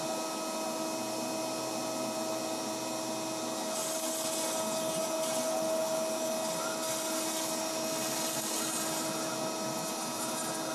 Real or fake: real